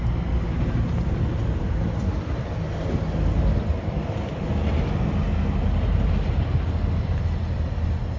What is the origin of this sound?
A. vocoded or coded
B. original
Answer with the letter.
B